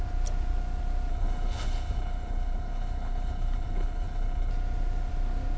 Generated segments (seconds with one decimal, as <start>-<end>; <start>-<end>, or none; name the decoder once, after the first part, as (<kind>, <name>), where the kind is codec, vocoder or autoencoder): 1.1-4.5 (codec, HILCodec)